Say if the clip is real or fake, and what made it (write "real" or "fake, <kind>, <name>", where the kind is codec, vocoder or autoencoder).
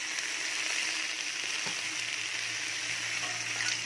real